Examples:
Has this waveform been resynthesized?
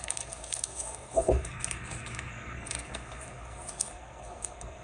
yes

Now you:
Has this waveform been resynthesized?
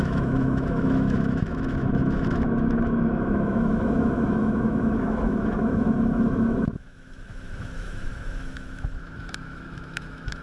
yes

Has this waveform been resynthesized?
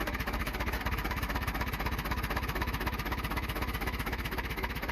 yes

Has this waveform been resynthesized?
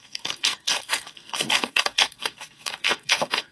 yes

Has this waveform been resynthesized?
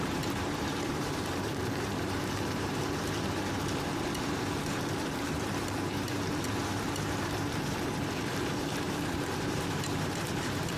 yes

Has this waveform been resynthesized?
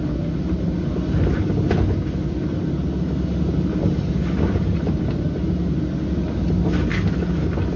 no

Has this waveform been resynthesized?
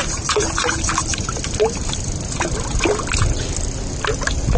no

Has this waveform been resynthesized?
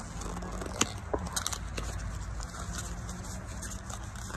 no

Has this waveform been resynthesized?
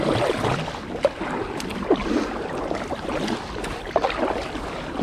no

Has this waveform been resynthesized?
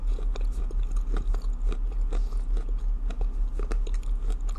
no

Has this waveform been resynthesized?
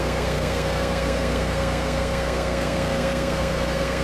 yes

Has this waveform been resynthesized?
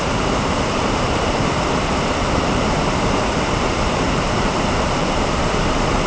yes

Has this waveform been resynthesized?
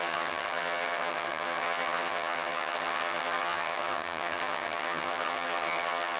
yes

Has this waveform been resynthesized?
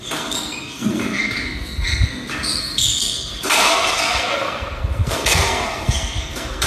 yes